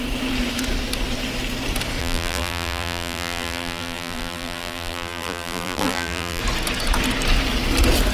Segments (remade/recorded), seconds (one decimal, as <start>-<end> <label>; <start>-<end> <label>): 0.0-2.0 recorded; 2.0-6.4 remade; 6.4-8.1 recorded